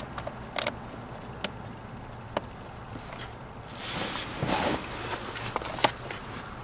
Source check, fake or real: real